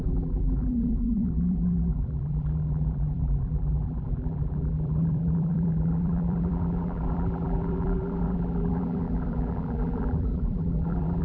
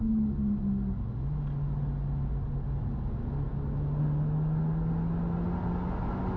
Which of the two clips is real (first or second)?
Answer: second